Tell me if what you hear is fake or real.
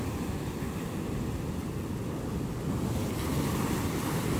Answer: real